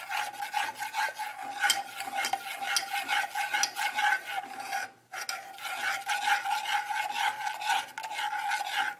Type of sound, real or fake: real